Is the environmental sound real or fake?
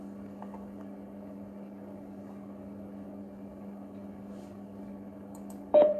fake